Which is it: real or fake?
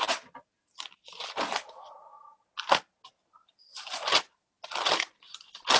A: real